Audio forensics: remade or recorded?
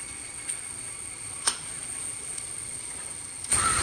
remade